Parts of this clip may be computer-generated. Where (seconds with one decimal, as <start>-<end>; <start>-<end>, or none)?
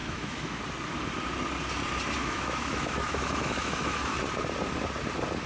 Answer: 0.0-0.6; 2.2-4.2